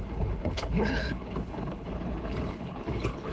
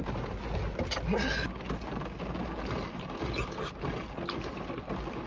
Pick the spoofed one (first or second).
first